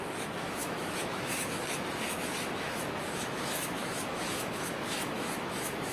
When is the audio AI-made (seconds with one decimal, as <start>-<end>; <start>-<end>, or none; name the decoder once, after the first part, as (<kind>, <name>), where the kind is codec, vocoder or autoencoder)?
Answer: 0.0-5.9 (autoencoder, DAC-VAE)